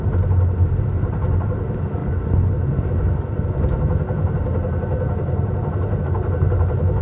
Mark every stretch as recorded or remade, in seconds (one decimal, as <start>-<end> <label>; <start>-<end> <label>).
0.0-7.0 recorded